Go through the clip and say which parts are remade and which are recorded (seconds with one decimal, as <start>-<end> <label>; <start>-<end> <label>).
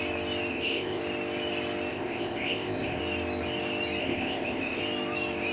0.0-0.5 recorded; 0.5-1.0 remade; 1.0-1.9 recorded; 1.9-3.0 remade; 3.0-4.0 recorded; 4.0-4.8 remade; 4.8-5.5 recorded